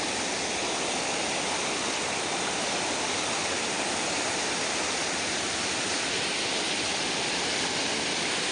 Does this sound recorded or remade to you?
recorded